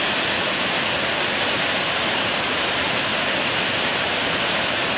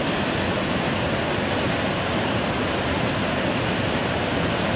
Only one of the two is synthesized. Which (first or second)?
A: first